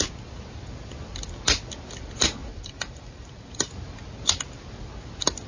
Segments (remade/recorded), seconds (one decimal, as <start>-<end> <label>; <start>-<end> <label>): 0.0-2.5 recorded; 2.5-3.7 remade; 3.7-5.5 recorded